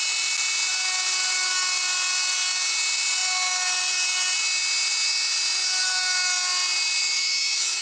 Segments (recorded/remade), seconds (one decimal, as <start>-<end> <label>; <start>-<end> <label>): 0.0-7.0 recorded; 7.0-7.8 remade